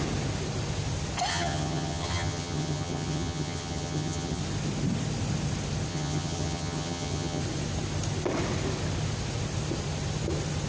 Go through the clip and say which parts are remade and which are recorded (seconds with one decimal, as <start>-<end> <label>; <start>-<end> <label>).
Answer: 0.0-1.3 recorded; 1.3-4.4 remade; 4.4-5.9 recorded; 5.9-7.4 remade; 7.4-10.7 recorded